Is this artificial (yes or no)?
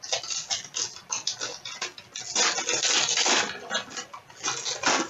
no